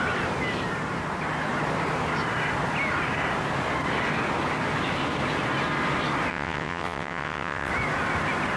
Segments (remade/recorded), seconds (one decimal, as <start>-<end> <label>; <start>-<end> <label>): 0.0-6.3 recorded; 6.3-7.7 remade; 7.7-8.6 recorded